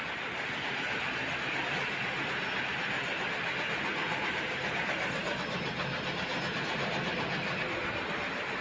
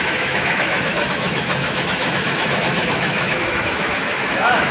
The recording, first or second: first